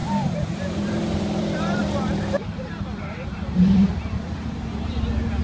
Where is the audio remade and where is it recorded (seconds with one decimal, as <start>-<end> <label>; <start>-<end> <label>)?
0.0-5.4 remade